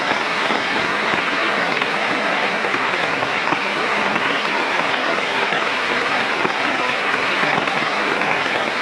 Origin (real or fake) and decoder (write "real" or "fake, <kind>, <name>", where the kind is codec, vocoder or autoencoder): fake, codec, SNAC